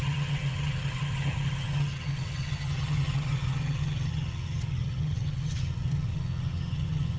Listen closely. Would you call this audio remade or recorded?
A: remade